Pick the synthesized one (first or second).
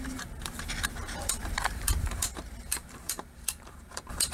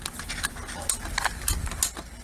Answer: first